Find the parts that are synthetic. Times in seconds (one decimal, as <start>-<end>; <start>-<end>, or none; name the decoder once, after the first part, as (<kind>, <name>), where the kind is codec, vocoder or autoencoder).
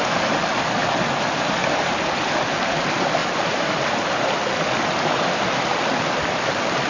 none